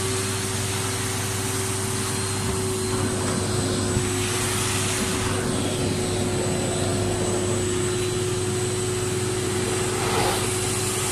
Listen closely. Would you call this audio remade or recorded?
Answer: recorded